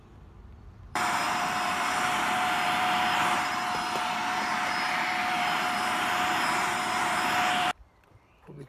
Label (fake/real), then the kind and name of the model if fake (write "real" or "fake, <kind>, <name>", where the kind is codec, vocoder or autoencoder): fake, vocoder, BigVGAN v2